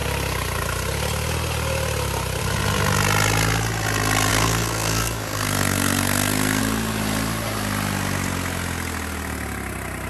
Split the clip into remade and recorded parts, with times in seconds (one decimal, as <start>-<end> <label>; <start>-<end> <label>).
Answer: 0.0-4.3 recorded; 4.3-6.6 remade; 6.6-10.1 recorded